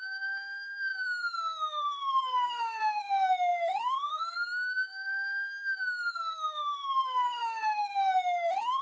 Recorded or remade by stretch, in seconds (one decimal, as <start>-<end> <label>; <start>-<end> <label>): 0.0-8.8 remade